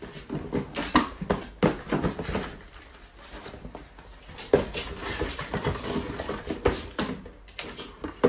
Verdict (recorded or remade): recorded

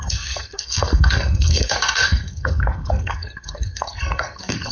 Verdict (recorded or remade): remade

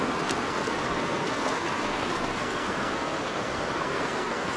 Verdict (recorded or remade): remade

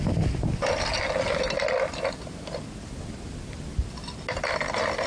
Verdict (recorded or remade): recorded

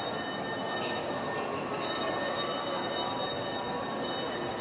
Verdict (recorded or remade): recorded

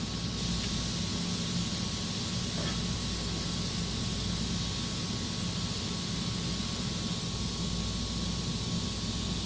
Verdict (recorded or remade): recorded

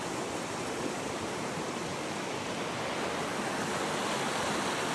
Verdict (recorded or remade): recorded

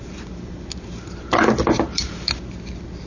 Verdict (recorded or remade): recorded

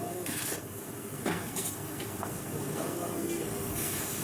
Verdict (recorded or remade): remade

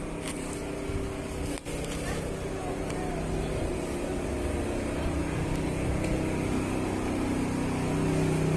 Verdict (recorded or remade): recorded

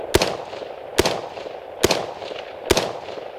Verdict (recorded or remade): recorded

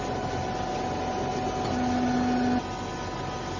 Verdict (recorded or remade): recorded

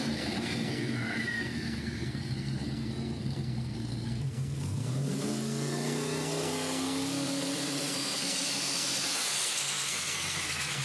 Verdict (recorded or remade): remade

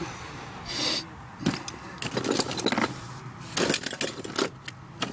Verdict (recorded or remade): recorded